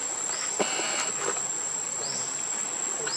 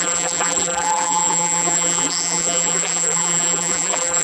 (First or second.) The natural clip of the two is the first